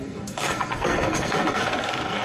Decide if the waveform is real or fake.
fake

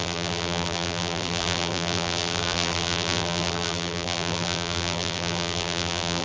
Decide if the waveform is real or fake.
fake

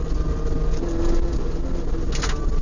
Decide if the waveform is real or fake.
real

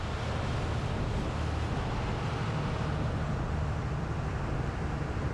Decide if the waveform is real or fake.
real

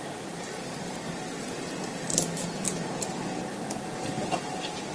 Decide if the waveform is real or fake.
real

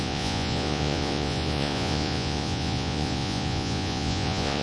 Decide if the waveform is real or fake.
fake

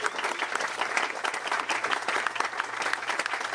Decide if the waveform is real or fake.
real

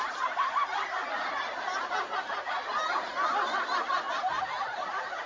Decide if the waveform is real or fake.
real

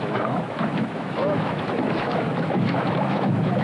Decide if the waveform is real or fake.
fake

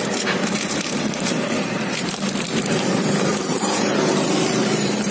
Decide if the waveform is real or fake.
fake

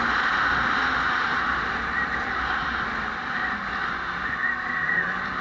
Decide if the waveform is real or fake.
fake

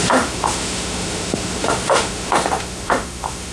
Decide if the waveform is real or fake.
fake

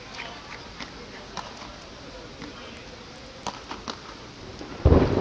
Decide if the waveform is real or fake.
real